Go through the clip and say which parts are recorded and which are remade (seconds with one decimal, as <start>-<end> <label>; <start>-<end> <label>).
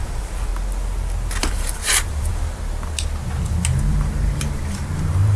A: 0.0-0.5 remade; 0.5-1.4 recorded; 1.4-2.3 remade; 2.3-3.9 recorded; 3.9-5.4 remade